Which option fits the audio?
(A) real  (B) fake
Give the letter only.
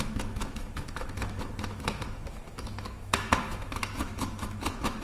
B